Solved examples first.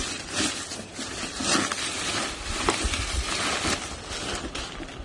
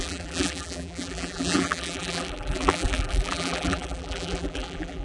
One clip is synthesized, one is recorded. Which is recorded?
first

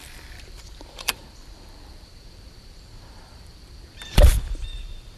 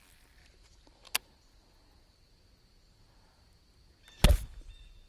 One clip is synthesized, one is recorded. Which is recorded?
second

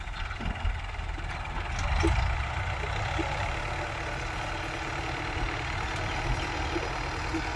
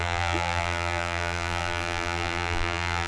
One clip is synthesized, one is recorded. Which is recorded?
first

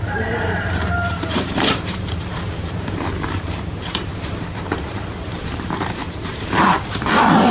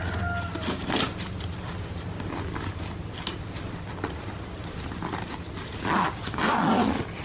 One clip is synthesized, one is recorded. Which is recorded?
second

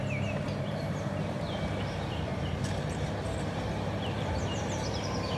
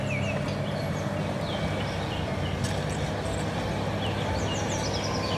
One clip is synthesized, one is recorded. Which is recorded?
second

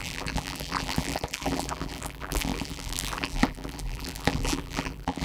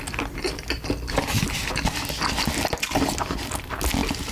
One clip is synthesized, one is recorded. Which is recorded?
second